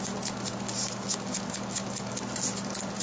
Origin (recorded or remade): recorded